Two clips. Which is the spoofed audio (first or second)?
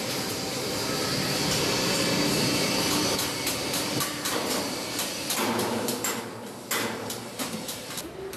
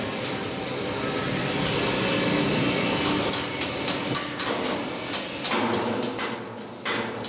first